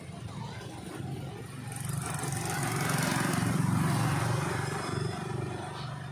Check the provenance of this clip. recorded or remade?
recorded